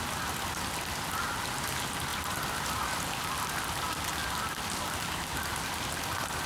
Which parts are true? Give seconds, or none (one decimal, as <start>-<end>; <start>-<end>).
0.0-6.5